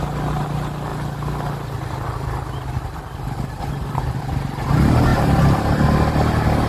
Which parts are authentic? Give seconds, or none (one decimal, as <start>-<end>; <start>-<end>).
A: 0.0-6.7